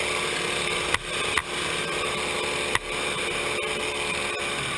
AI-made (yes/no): no